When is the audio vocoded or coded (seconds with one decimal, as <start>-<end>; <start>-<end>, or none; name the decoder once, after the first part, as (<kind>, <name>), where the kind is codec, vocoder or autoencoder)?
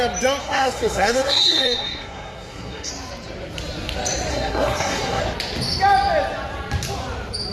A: 0.4-2.9 (codec, SNAC); 4.3-5.2